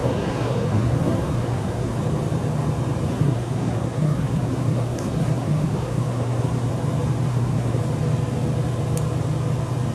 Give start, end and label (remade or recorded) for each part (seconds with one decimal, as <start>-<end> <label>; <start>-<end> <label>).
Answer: 0.0-1.9 remade; 1.9-3.1 recorded; 3.1-6.7 remade; 6.7-7.3 recorded; 7.3-7.8 remade; 7.8-9.9 recorded